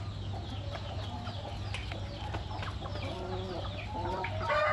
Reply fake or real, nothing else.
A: real